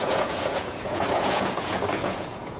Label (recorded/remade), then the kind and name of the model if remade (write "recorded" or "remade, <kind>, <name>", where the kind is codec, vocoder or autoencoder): remade, vocoder, Vocos